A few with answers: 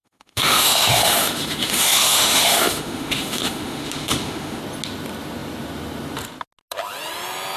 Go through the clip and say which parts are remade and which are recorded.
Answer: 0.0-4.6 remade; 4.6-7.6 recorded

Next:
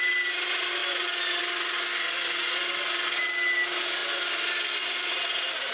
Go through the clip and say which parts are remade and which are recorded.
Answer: 0.0-5.7 recorded

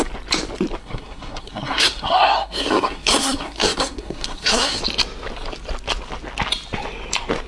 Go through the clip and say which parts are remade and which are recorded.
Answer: 0.0-0.8 recorded; 0.8-4.8 remade; 4.8-7.5 recorded

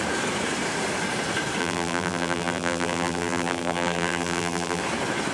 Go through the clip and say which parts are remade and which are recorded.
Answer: 0.0-1.6 recorded; 1.6-4.8 remade; 4.8-5.3 recorded

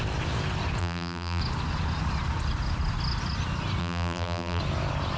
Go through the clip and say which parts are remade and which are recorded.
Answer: 0.0-0.8 recorded; 0.8-1.4 remade; 1.4-3.8 recorded; 3.8-4.6 remade; 4.6-5.2 recorded

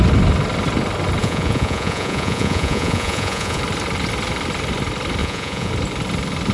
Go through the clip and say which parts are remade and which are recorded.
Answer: 0.0-1.2 recorded; 1.2-3.6 remade; 3.6-5.2 recorded; 5.2-5.7 remade; 5.7-6.5 recorded

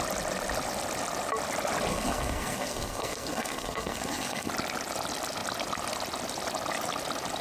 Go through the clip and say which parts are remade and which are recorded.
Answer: 0.0-1.9 recorded; 1.9-4.5 remade; 4.5-7.4 recorded

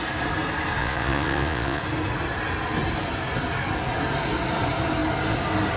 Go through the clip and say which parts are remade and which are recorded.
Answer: 0.0-0.8 recorded; 0.8-1.8 remade; 1.8-5.8 recorded